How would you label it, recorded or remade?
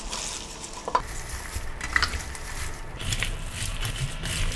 recorded